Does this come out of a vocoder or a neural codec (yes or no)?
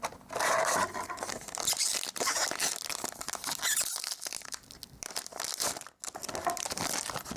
no